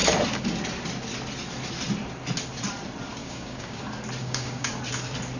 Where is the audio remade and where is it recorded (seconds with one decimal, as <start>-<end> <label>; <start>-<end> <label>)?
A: 0.0-3.2 recorded; 3.2-3.8 remade; 3.8-4.2 recorded; 4.2-4.7 remade; 4.7-5.4 recorded